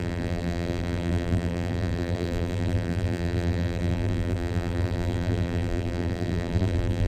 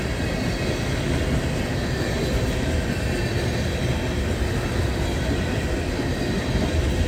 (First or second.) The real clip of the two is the second